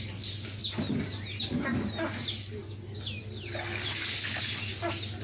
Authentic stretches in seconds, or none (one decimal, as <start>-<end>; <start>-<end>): 0.0-5.2